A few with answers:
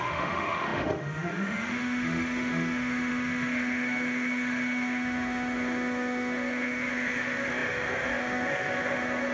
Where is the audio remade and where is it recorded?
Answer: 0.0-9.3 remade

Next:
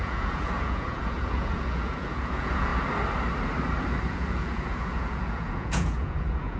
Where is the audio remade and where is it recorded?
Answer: 0.0-2.7 remade; 2.7-4.1 recorded; 4.1-6.6 remade

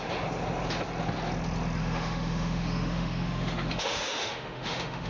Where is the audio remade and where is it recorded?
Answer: 0.0-1.8 recorded; 1.8-5.1 remade

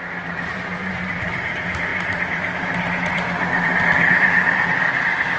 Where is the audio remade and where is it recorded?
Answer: 0.0-5.4 remade